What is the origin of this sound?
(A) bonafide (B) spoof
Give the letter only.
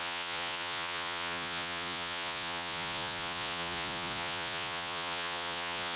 B